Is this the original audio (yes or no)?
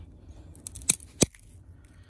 yes